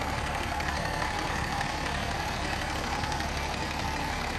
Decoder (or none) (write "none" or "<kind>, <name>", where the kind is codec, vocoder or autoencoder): codec, SNAC